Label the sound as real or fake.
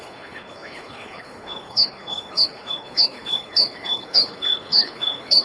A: fake